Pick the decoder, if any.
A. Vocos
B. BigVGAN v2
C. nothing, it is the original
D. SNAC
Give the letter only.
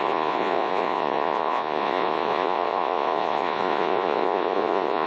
A